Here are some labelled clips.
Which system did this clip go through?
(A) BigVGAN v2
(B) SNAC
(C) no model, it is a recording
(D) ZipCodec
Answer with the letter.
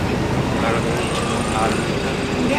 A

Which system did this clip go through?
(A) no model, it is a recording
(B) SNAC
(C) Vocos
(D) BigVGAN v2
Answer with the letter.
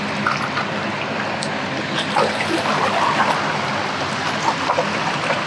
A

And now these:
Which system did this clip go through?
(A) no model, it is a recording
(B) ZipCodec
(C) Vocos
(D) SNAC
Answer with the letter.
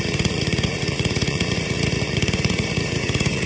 C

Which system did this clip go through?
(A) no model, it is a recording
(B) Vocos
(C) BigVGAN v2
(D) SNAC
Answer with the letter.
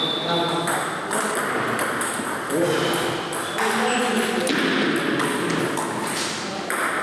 A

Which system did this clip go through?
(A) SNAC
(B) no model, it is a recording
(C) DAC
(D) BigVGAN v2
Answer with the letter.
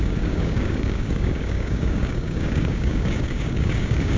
C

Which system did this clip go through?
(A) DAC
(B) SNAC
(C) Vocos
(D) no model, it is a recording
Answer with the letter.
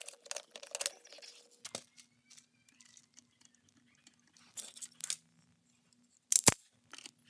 D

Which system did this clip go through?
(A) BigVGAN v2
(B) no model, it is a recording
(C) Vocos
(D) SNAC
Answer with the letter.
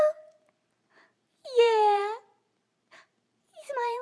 A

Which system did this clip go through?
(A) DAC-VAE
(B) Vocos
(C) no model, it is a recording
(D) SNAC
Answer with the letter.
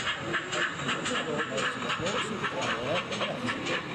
C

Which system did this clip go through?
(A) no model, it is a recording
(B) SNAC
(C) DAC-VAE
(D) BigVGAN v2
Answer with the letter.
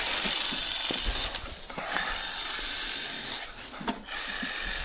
A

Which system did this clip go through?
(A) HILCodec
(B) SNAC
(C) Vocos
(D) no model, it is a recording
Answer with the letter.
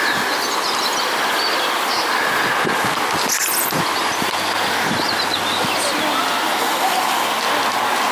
D